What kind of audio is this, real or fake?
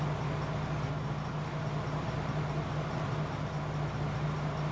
real